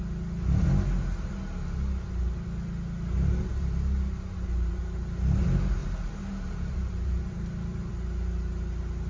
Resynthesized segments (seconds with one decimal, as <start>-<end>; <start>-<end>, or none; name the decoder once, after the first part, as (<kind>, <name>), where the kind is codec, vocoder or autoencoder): 3.5-4.8 (vocoder, BigVGAN v2); 5.8-7.9

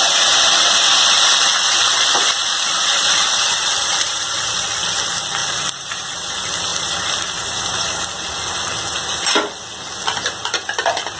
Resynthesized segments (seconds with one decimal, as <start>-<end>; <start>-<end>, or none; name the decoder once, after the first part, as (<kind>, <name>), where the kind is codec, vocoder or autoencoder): 2.4-4.6 (vocoder, BigVGAN v2); 5.4-6.3

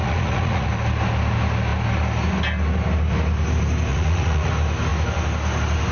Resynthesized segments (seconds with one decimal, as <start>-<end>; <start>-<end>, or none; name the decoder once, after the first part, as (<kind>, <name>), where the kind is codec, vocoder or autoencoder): 0.0-0.7 (vocoder, Vocos); 3.9-4.5

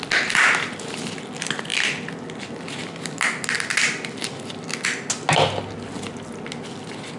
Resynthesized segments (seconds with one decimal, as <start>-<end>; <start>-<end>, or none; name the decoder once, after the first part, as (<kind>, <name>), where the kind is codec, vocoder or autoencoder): none